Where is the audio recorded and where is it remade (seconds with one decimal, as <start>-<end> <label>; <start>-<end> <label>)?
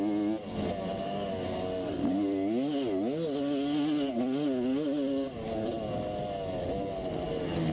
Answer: 0.0-7.7 recorded